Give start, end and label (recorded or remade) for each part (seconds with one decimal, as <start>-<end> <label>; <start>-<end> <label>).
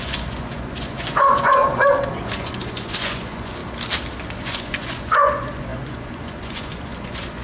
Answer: 0.0-1.6 remade; 1.6-2.1 recorded; 2.1-3.6 remade; 3.6-4.4 recorded; 4.4-7.4 remade